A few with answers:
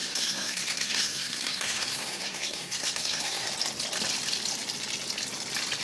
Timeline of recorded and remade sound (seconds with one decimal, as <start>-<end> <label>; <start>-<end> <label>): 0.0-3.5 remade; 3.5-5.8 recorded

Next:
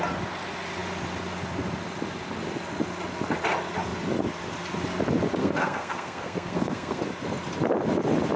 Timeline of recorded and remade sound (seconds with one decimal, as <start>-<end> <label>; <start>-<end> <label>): 0.0-5.4 recorded; 5.4-7.0 remade; 7.0-8.4 recorded

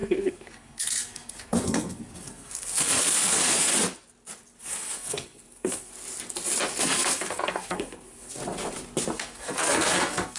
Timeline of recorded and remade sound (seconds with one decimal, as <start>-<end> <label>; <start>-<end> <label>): 0.0-3.7 remade; 3.7-4.6 recorded; 4.6-5.9 remade; 5.9-6.8 recorded; 6.8-8.4 remade; 8.4-9.2 recorded; 9.2-10.4 remade

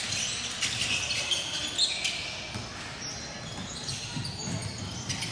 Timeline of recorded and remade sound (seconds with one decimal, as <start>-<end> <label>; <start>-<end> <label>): 0.0-5.3 recorded